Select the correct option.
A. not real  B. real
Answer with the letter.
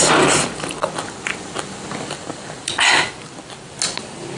B